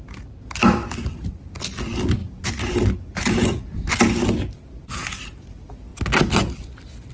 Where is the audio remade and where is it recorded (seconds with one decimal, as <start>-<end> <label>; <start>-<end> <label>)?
0.0-2.2 recorded; 2.2-3.9 remade; 3.9-7.1 recorded

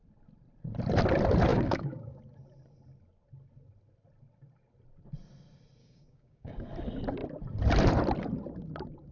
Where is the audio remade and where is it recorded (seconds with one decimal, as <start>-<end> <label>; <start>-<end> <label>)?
0.0-1.5 recorded; 1.5-2.2 remade; 2.2-5.8 recorded; 5.8-6.7 remade; 6.7-9.1 recorded

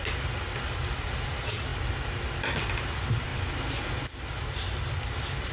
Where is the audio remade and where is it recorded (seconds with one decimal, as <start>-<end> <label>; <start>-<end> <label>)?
0.0-5.5 recorded

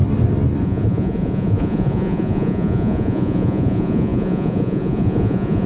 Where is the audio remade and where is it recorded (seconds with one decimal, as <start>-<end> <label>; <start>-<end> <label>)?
0.0-0.6 recorded; 0.6-5.7 remade

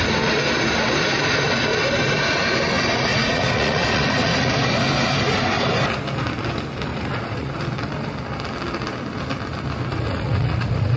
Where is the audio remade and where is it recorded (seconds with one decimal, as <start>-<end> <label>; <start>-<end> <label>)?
0.0-3.1 recorded; 3.1-4.5 remade; 4.5-6.9 recorded; 6.9-7.5 remade; 7.5-9.9 recorded; 9.9-11.0 remade

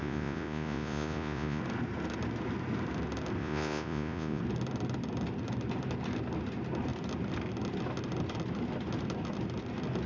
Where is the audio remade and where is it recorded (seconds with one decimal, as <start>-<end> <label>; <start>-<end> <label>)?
0.0-1.6 remade; 1.6-3.4 recorded; 3.4-4.4 remade; 4.4-10.1 recorded

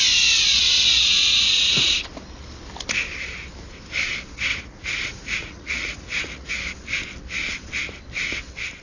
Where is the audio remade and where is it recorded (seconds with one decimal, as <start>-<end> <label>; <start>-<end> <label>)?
0.0-4.5 recorded; 4.5-6.5 remade; 6.5-8.8 recorded